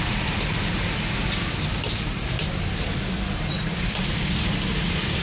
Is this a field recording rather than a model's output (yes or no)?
yes